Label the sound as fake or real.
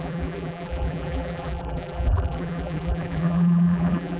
fake